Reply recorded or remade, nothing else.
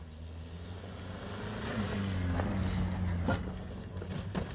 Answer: recorded